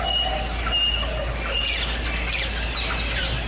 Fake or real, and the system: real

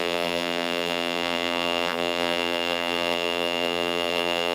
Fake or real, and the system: fake, vocoder, BigVGAN v2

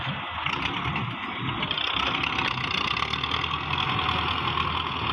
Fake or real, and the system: real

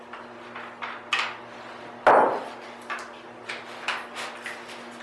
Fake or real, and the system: real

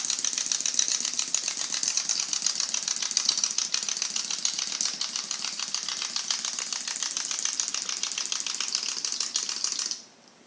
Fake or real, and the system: real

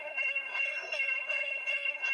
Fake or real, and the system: fake, codec, SNAC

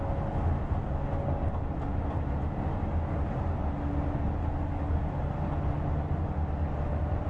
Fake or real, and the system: real